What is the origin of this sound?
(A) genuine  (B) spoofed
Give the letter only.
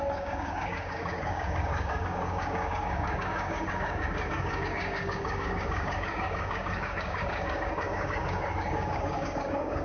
B